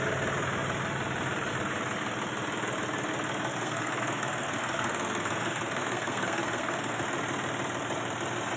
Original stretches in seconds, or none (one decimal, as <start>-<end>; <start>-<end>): 0.0-3.5; 7.0-8.6